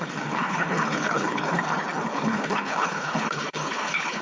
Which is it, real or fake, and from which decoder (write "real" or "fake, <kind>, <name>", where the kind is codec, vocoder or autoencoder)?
fake, codec, HILCodec